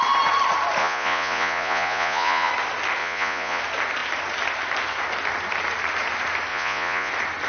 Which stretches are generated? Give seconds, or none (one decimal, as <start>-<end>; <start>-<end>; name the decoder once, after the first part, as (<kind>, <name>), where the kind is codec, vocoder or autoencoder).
0.8-2.5 (vocoder, Vocos); 3.0-3.6; 6.5-7.1